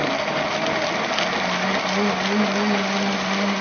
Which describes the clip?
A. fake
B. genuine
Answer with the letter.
B